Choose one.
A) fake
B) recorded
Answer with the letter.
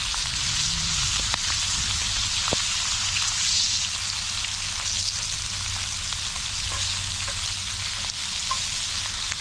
B